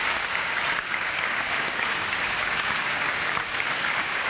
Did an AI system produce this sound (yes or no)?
yes